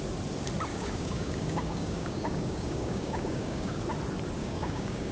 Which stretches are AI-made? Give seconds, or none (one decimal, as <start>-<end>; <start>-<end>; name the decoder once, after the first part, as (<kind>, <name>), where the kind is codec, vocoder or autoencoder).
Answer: 0.7-3.8 (codec, DAC); 4.4-5.1